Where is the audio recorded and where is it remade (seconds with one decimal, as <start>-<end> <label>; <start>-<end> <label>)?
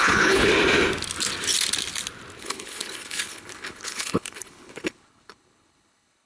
0.0-0.5 remade; 0.5-2.4 recorded; 2.4-6.3 remade